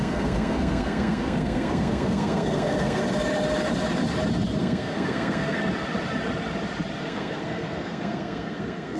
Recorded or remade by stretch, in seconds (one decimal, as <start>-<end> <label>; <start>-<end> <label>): 0.0-3.0 remade; 3.0-4.6 recorded; 4.6-5.6 remade; 5.6-7.0 recorded; 7.0-9.0 remade